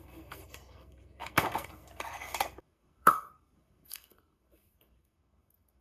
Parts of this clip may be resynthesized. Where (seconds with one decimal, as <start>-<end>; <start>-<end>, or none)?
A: 0.0-5.8